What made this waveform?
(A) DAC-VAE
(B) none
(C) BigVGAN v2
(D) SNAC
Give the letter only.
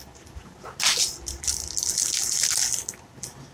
B